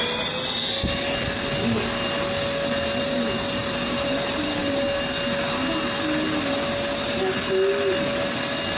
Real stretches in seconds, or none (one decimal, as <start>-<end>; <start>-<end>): 0.0-8.8